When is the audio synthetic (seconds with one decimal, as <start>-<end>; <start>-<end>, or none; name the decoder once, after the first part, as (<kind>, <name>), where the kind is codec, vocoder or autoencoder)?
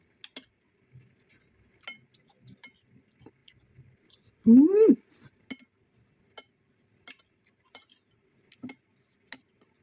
none